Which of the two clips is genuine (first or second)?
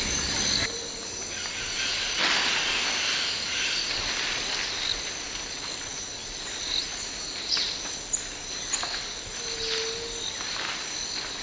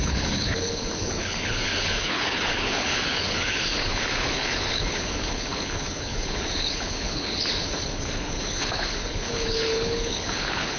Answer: first